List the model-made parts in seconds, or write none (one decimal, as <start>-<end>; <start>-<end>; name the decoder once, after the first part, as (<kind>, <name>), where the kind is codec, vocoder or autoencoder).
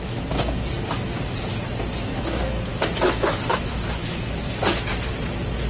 2.7-4.5 (autoencoder, DAC-VAE)